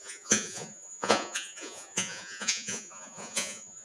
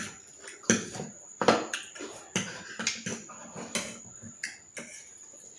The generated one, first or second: first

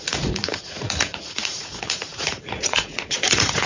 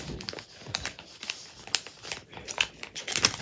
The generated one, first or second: first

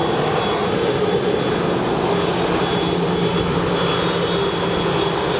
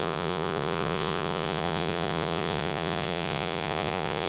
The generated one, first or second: second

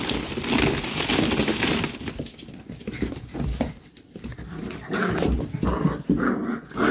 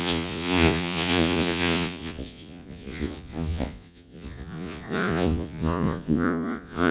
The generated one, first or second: second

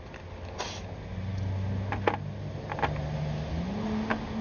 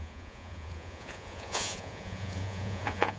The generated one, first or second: second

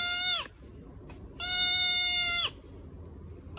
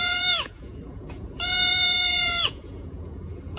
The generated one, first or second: second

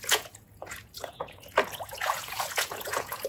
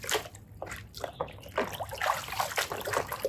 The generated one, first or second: first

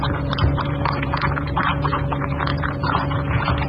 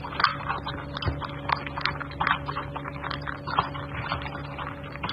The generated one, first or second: first